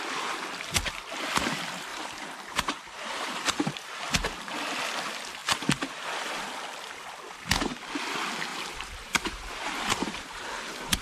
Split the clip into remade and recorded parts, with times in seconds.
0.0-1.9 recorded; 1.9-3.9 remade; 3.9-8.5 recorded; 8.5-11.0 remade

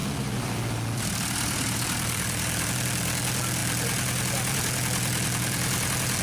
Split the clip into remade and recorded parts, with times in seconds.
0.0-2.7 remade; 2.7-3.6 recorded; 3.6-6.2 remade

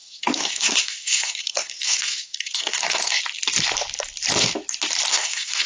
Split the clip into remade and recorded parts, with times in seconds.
0.0-3.2 remade; 3.2-5.1 recorded; 5.1-5.7 remade

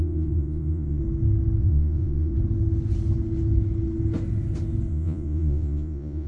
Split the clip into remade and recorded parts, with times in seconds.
0.0-1.0 remade; 1.0-1.6 recorded; 1.6-2.3 remade; 2.3-4.9 recorded; 4.9-6.3 remade

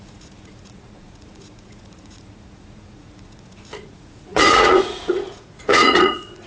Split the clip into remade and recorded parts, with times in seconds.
0.0-6.5 remade

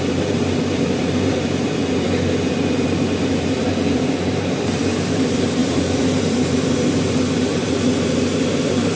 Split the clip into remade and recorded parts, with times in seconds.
0.0-1.8 remade; 1.8-2.5 recorded; 2.5-9.0 remade